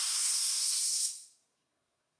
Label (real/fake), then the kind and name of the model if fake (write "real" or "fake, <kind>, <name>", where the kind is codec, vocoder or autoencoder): fake, codec, SNAC